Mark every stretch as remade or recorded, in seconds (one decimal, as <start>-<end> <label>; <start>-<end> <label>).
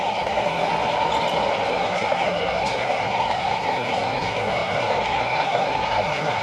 0.0-0.7 remade; 0.7-1.7 recorded; 1.7-6.4 remade